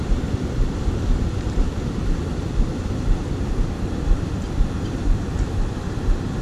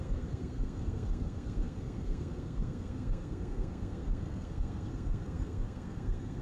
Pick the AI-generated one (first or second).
second